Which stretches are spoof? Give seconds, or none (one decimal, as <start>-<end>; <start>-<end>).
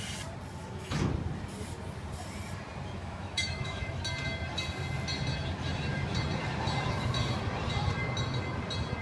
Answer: 0.6-1.1; 3.0-4.0